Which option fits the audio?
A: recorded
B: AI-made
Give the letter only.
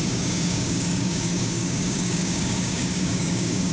B